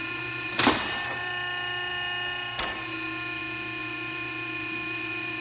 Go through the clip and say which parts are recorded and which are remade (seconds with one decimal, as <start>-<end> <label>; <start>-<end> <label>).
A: 0.0-1.3 remade; 1.3-3.8 recorded; 3.8-5.4 remade

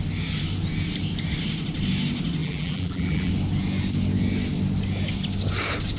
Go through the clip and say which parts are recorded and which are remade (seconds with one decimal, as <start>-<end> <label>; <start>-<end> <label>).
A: 0.0-2.4 recorded; 2.4-3.3 remade; 3.3-6.0 recorded

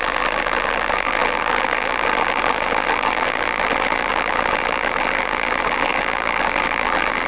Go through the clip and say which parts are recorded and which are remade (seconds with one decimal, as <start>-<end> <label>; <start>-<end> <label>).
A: 0.0-7.3 remade